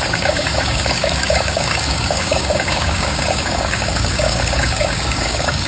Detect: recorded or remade remade